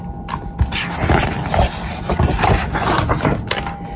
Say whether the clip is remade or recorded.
recorded